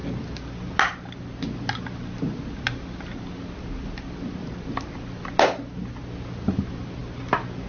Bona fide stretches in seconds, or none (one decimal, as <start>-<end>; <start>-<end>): 0.0-7.7